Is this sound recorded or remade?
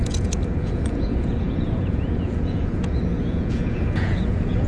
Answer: remade